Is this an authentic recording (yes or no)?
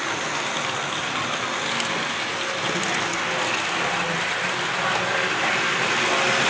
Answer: yes